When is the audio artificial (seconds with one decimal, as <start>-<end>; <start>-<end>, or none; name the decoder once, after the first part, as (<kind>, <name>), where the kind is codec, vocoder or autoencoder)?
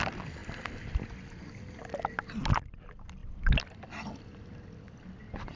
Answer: none